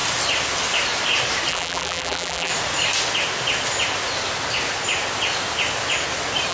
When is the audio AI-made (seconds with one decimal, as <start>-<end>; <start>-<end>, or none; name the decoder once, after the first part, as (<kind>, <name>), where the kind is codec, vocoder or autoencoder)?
1.5-2.5 (vocoder, BigVGAN v2)